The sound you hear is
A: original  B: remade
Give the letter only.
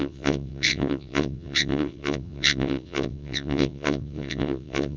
B